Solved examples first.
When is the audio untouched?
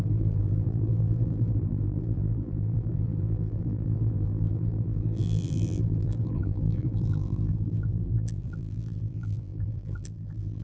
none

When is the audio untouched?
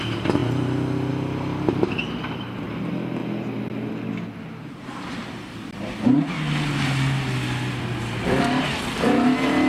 0.0-9.7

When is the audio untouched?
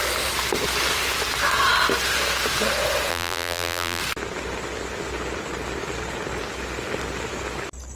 0.0-3.1; 4.0-7.9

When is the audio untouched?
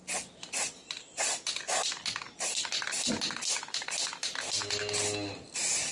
0.0-5.9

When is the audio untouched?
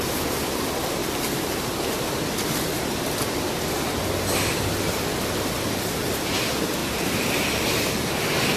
0.0-1.0; 2.1-6.8; 7.9-8.6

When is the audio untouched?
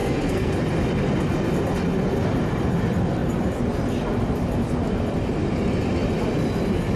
0.5-7.0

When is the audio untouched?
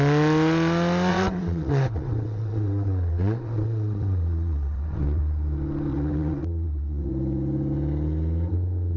0.0-1.1; 5.2-5.9; 7.1-9.0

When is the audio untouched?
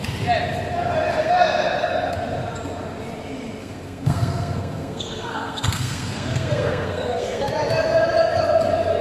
0.0-1.2; 1.9-3.6; 7.5-9.0